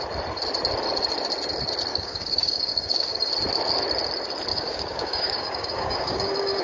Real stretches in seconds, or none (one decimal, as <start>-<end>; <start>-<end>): 0.0-1.9; 3.3-4.5